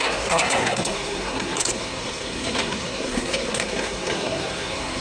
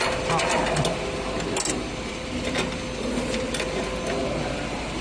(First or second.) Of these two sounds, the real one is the second